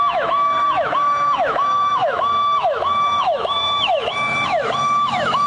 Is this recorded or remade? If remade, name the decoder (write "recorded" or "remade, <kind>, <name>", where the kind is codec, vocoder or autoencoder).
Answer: remade, autoencoder, DAC-VAE